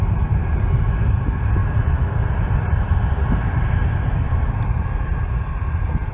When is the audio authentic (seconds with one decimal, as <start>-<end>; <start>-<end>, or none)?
0.0-1.6; 5.2-6.1